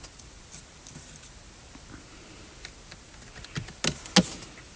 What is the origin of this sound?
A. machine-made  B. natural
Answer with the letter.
B